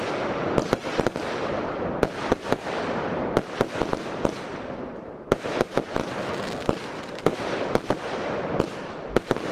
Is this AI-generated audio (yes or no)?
no